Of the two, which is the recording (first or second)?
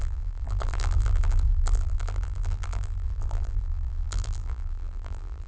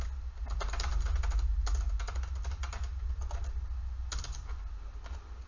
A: second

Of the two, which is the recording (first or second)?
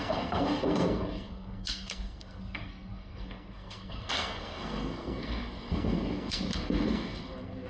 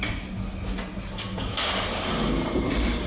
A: second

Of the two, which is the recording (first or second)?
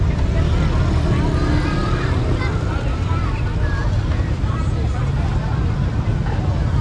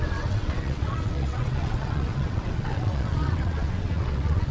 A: first